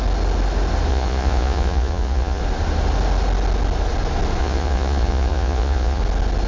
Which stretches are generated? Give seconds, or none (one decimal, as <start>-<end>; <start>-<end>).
0.9-2.4; 4.4-6.0